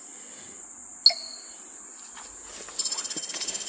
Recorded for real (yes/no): yes